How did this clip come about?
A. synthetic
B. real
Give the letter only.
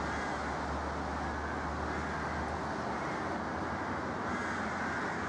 B